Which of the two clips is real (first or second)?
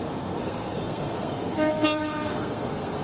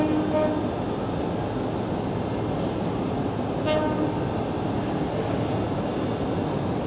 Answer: second